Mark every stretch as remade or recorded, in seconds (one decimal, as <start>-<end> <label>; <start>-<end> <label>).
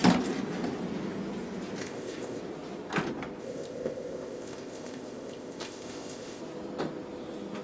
0.0-1.8 recorded; 1.8-2.4 remade; 2.4-3.4 recorded; 3.4-6.4 remade; 6.4-7.6 recorded